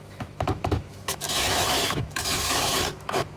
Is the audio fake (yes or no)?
yes